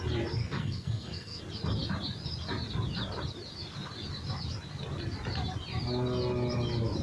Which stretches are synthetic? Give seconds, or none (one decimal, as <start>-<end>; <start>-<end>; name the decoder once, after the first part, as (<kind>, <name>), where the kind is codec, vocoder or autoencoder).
0.4-1.4 (codec, SNAC)